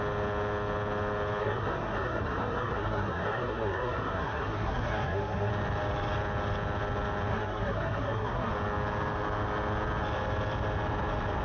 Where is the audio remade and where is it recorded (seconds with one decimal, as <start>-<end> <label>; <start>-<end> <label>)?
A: 0.0-1.4 recorded; 1.4-5.5 remade; 5.5-7.3 recorded; 7.3-8.5 remade; 8.5-11.4 recorded